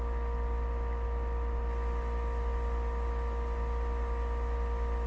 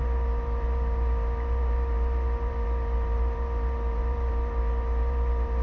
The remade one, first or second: second